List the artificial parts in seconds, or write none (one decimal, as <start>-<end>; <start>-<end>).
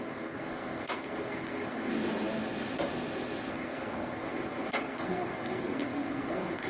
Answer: 0.0-1.9; 3.5-6.7